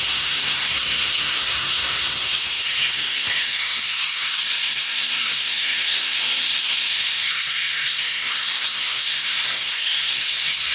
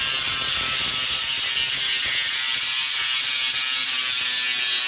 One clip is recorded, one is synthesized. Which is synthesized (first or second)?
first